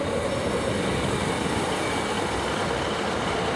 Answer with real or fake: real